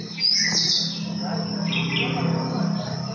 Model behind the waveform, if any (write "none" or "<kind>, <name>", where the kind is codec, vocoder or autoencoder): none